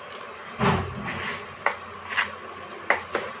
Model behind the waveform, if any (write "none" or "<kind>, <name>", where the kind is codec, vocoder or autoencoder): none